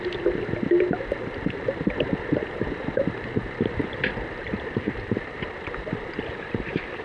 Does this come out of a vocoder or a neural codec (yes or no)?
no